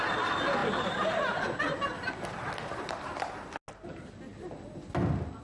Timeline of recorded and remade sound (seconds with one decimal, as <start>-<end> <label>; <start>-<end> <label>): 0.0-5.4 recorded

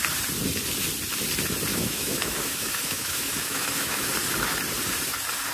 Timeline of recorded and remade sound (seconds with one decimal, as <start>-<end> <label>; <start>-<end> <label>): 0.0-1.7 recorded; 1.7-4.1 remade; 4.1-5.5 recorded

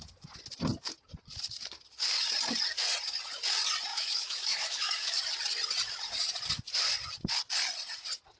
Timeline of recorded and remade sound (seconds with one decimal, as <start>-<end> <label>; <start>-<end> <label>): 0.0-3.9 recorded; 3.9-5.2 remade; 5.2-8.4 recorded

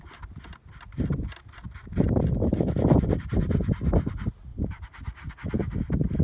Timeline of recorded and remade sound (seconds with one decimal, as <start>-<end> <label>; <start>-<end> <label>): 0.0-6.2 recorded

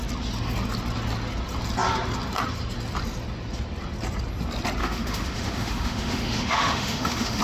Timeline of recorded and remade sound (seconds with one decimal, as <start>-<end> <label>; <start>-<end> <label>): 0.0-4.8 recorded; 4.8-7.4 remade

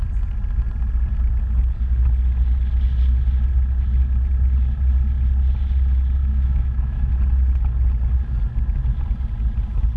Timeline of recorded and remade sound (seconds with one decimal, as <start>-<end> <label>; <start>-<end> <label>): 0.0-6.2 recorded; 6.2-7.1 remade; 7.1-10.0 recorded

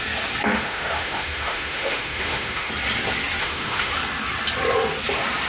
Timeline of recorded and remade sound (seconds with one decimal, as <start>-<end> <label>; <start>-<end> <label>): 0.0-0.5 recorded; 0.5-2.7 remade; 2.7-3.4 recorded; 3.4-3.9 remade; 3.9-5.5 recorded